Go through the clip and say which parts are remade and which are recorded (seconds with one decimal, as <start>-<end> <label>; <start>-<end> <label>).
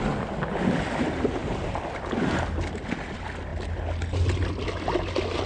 0.0-1.4 recorded; 1.4-1.9 remade; 1.9-5.5 recorded